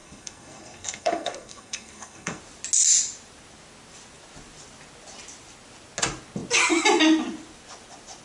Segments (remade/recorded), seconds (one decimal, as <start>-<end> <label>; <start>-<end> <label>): 0.0-2.4 remade; 2.4-8.2 recorded